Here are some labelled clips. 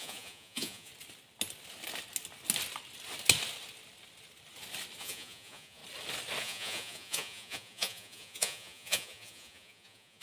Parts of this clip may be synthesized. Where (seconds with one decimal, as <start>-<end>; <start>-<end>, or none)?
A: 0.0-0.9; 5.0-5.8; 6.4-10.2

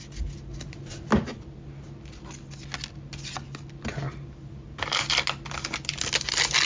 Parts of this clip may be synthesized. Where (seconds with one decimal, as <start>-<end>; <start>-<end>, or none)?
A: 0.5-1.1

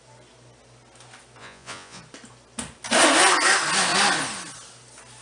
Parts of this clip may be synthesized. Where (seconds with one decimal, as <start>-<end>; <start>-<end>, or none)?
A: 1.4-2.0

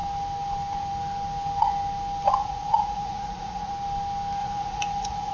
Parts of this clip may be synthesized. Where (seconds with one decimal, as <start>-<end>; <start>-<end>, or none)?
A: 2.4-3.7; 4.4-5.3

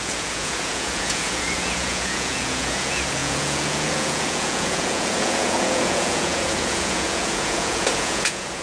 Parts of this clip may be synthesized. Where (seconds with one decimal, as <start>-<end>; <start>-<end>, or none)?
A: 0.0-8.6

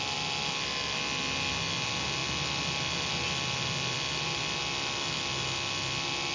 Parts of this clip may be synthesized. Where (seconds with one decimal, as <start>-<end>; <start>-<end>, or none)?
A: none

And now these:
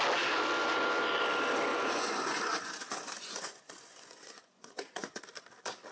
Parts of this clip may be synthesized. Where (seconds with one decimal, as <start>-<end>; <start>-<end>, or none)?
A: 1.7-5.2